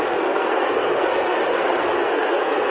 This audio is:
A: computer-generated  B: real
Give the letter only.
A